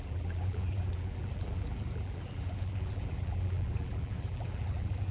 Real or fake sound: fake